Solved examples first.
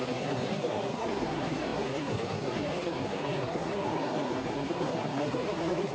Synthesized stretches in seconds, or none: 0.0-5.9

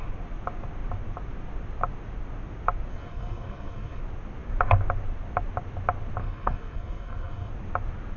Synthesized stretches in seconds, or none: 2.9-4.0; 6.2-7.5

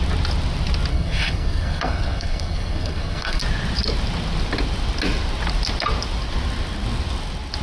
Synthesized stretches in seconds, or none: 0.9-3.4

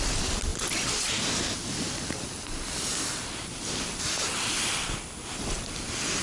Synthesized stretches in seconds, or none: 0.0-0.5; 3.8-6.2

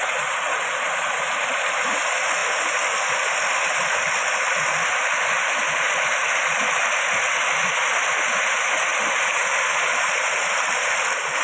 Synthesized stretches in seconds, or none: none

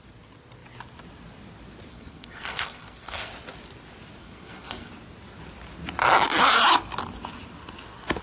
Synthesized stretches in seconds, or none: 1.9-3.3; 4.2-4.9

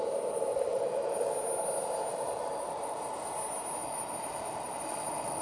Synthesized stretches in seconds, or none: 0.5-1.3; 2.1-3.3; 3.8-5.4

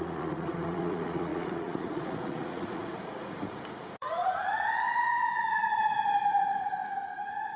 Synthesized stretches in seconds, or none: 0.0-7.6